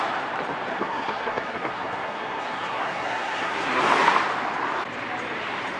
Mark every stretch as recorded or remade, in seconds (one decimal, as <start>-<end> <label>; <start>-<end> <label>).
0.0-0.7 recorded; 0.7-3.8 remade; 3.8-5.8 recorded